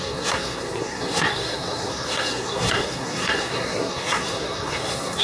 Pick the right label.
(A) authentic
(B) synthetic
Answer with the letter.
B